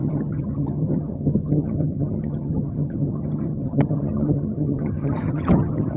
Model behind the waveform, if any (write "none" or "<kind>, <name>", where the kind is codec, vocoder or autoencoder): vocoder, HiFi-GAN